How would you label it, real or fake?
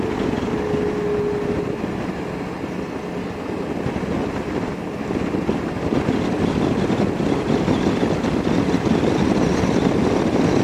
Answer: real